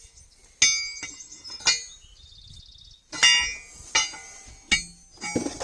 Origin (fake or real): real